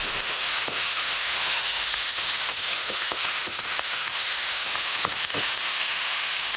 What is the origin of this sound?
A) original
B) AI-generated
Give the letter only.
B